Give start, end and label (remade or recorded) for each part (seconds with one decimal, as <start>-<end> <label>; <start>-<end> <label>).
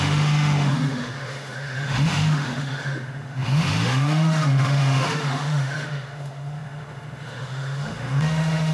0.0-8.7 remade